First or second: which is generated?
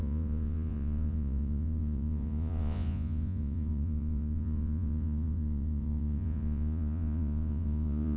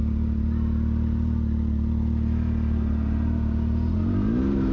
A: first